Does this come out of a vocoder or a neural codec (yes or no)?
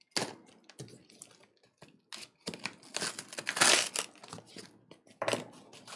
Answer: no